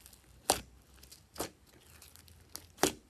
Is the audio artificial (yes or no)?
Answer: no